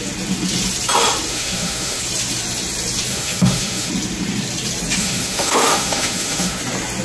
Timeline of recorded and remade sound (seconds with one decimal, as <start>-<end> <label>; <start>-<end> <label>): 0.0-1.3 recorded; 1.3-2.0 remade; 2.0-3.1 recorded; 3.1-3.9 remade; 3.9-5.0 recorded; 5.0-6.6 remade; 6.6-7.0 recorded